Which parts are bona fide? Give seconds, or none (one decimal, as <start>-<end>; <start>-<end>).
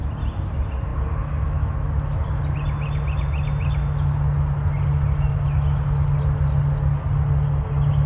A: 0.0-8.1